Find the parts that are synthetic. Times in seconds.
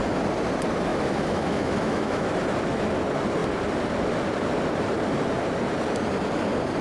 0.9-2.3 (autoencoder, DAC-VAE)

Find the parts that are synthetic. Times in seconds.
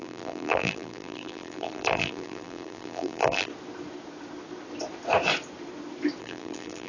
0.0-3.5 (vocoder, BigVGAN v2); 6.2-6.9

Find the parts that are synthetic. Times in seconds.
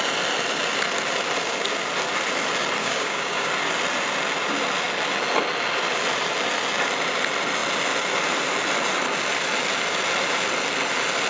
2.8-3.5 (codec, DAC)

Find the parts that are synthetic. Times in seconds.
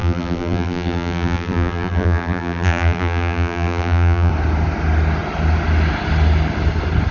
0.0-4.3 (vocoder, BigVGAN v2)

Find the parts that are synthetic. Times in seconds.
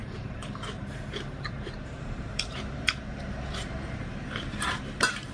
0.0-5.3 (vocoder, BigVGAN v2)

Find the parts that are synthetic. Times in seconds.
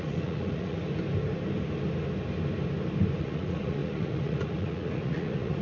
0.0-0.8 (vocoder, Vocos); 3.2-5.6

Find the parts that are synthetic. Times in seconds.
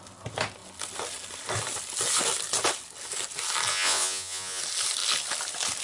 3.7-4.6 (vocoder, Vocos)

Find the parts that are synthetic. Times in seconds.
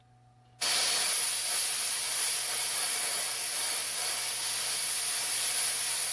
none